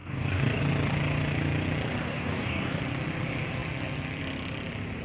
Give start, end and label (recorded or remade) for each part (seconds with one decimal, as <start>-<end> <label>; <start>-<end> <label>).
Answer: 0.0-0.6 remade; 0.6-2.1 recorded; 2.1-2.8 remade; 2.8-5.0 recorded